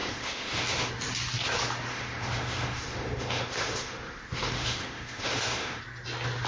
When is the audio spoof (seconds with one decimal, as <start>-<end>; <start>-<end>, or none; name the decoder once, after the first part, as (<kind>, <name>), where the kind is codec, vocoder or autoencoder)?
0.0-0.9 (autoencoder, DAC-VAE); 1.9-5.8